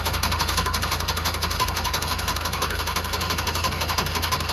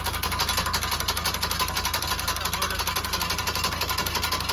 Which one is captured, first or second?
second